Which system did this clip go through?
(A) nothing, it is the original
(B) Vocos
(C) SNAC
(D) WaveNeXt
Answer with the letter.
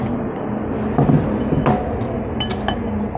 A